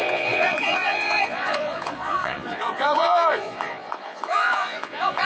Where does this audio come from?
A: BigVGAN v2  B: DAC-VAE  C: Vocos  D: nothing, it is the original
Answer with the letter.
C